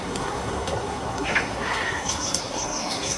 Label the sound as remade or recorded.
remade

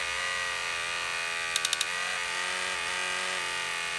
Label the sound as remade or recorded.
recorded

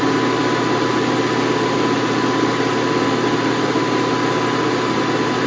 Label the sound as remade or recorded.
recorded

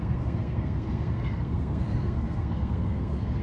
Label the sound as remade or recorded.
remade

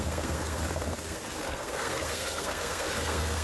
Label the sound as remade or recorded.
remade